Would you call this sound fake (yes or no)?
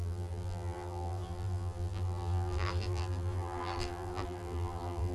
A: yes